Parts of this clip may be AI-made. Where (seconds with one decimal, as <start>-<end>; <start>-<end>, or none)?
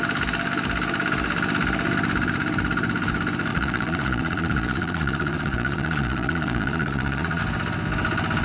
3.5-7.4